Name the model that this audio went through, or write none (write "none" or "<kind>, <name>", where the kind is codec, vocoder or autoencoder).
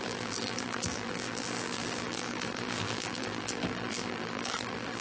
vocoder, BigVGAN v2